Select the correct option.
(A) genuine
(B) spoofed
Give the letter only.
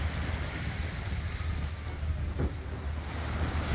A